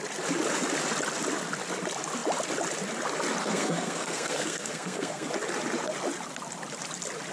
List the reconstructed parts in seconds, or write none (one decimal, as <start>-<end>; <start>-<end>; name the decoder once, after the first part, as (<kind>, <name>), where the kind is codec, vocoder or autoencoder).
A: 3.4-5.3 (codec, SNAC)